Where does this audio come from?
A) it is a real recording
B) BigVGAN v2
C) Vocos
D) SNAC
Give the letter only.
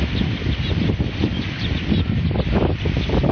B